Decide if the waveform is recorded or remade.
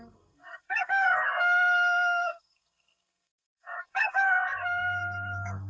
remade